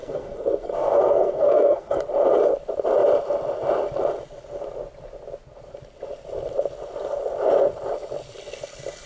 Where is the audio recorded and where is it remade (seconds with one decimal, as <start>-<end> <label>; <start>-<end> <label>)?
0.0-2.0 remade; 2.0-9.1 recorded